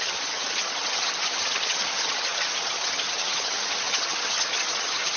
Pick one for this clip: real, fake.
fake